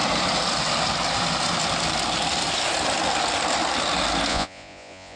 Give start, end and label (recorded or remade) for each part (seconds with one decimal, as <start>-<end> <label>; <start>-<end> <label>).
0.0-4.3 recorded; 4.3-5.2 remade

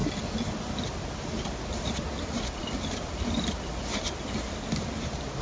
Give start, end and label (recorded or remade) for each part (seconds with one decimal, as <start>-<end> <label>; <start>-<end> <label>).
0.0-5.4 recorded

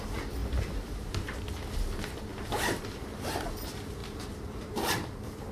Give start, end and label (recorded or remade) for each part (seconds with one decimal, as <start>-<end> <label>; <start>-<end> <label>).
0.0-0.4 recorded; 0.4-1.1 remade; 1.1-4.0 recorded; 4.0-4.8 remade; 4.8-5.5 recorded